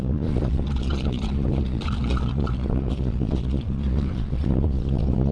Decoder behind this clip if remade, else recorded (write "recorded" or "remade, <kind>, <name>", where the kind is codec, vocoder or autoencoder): remade, vocoder, Vocos